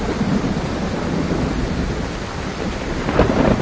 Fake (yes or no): no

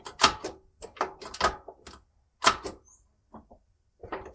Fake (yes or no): no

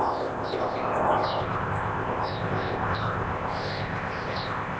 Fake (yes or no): yes